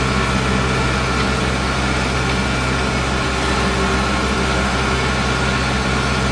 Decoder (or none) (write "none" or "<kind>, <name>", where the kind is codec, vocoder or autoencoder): none